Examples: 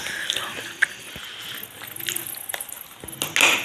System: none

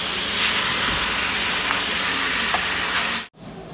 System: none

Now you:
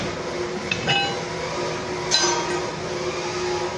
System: none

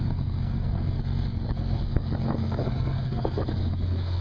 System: codec, SNAC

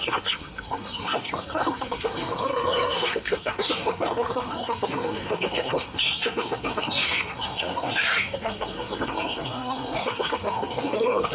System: codec, SNAC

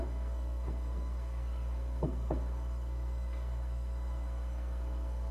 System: codec, SNAC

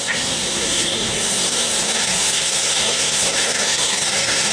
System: codec, SNAC